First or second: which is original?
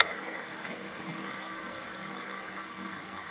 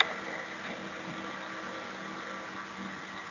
second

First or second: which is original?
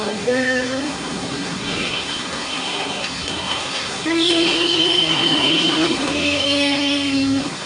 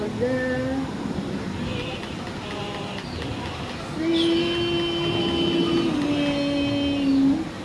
second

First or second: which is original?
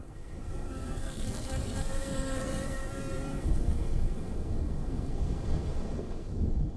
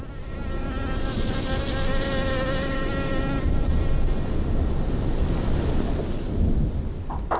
second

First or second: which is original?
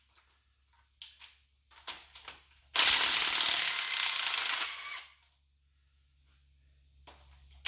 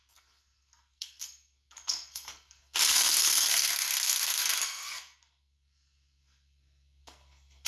first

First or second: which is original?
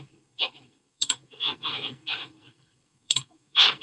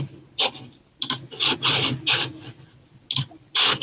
second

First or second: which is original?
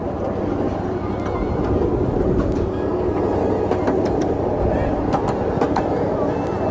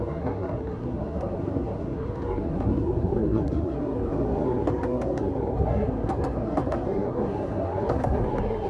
first